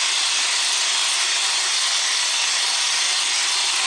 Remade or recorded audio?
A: recorded